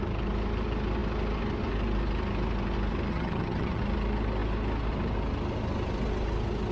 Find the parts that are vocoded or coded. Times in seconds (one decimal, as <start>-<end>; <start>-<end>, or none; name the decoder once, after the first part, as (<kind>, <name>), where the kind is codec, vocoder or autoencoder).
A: 3.1-3.8 (vocoder, HiFi-GAN)